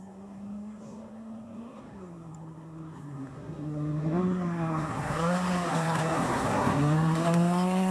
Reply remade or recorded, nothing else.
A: remade